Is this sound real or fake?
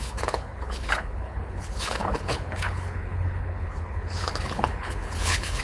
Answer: fake